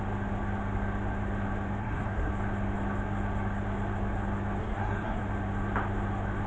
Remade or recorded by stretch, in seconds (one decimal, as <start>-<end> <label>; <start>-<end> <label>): 0.0-1.8 recorded; 1.8-2.3 remade; 2.3-4.6 recorded; 4.6-5.2 remade; 5.2-6.5 recorded